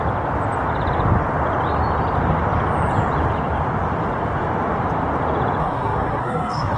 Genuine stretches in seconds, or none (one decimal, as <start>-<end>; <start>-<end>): 0.0-5.6